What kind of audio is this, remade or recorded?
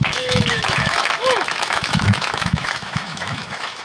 remade